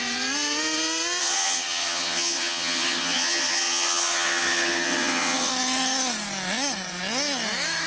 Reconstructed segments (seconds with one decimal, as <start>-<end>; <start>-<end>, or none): 1.2-5.5